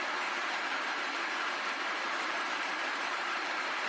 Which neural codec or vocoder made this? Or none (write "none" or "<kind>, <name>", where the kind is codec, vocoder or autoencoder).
vocoder, BigVGAN v2